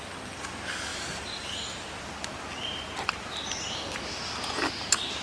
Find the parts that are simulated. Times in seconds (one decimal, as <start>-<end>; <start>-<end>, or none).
none